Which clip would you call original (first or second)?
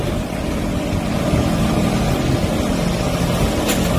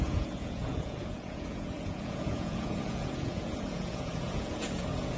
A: first